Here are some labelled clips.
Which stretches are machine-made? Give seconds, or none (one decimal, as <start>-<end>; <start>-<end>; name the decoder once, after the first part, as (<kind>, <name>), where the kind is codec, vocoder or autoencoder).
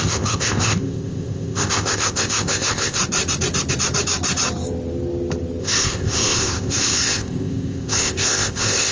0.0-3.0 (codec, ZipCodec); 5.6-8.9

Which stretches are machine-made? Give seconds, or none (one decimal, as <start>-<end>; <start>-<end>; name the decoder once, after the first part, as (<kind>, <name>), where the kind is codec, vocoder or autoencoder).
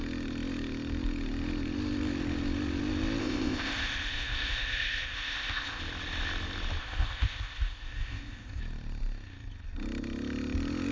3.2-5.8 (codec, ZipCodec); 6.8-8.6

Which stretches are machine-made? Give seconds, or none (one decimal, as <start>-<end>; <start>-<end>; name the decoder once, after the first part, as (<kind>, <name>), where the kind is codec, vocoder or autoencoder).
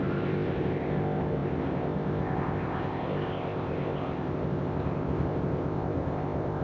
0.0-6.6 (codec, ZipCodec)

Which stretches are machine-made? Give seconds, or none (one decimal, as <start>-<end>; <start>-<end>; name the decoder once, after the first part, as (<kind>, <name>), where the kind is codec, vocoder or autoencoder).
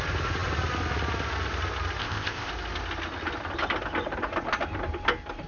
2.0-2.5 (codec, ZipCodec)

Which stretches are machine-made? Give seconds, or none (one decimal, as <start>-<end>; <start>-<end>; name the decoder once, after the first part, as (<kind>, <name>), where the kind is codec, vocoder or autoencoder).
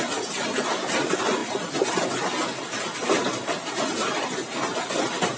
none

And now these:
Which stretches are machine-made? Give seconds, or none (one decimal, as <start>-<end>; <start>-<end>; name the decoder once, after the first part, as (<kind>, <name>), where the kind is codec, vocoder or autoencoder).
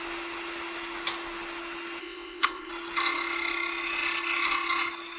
2.0-2.7 (codec, ZipCodec)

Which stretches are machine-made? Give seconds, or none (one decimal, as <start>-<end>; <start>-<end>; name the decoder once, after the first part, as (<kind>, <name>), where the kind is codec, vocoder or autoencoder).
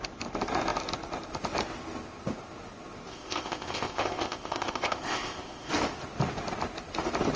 3.1-5.7 (codec, ZipCodec)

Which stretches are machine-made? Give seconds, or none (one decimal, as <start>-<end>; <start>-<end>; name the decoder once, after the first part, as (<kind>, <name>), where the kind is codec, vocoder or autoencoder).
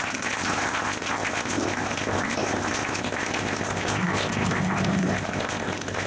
0.0-6.1 (codec, ZipCodec)